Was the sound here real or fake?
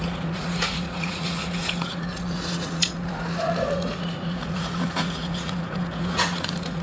fake